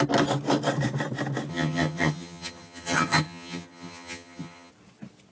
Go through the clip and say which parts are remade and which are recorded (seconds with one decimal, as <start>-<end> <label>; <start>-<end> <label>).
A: 0.0-1.5 recorded; 1.5-4.7 remade; 4.7-5.3 recorded

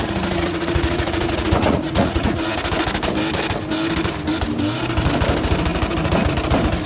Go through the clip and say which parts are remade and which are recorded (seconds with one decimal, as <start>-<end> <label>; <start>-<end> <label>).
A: 0.0-2.6 remade; 2.6-6.9 recorded

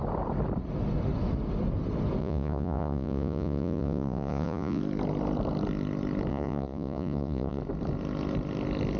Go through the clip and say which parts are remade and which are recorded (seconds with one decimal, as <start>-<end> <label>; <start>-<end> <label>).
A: 0.0-2.2 recorded; 2.2-4.8 remade; 4.8-6.3 recorded; 6.3-7.6 remade; 7.6-9.0 recorded

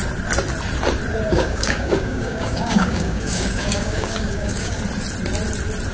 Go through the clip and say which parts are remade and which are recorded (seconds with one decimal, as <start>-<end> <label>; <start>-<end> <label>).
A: 0.0-1.3 recorded; 1.3-4.8 remade; 4.8-5.9 recorded

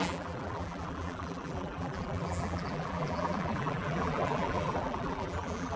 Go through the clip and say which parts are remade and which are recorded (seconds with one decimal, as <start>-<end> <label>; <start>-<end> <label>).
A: 0.0-5.8 remade

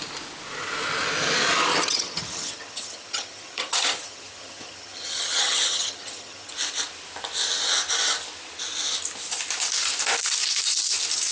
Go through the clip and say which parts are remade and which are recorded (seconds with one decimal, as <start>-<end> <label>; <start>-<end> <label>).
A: 0.0-1.7 recorded; 1.7-6.5 remade; 6.5-11.3 recorded

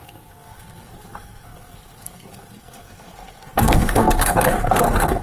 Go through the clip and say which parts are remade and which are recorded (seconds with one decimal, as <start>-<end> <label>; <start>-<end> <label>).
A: 0.0-5.2 remade

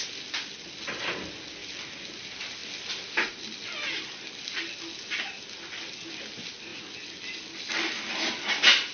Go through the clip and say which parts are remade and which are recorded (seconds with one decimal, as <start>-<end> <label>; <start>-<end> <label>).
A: 0.0-8.9 recorded